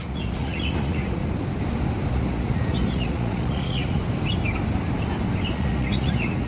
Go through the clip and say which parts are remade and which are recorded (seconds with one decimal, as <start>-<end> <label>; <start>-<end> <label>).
0.0-1.2 remade; 1.2-2.1 recorded; 2.1-4.0 remade; 4.0-5.5 recorded; 5.5-6.5 remade